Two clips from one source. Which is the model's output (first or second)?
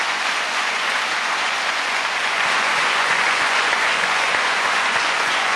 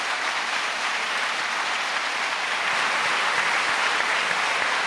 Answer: first